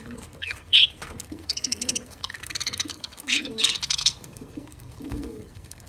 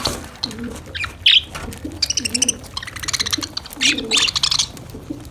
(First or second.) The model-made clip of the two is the first